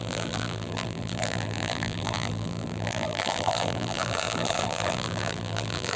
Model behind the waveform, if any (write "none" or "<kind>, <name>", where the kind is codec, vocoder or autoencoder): vocoder, BigVGAN v2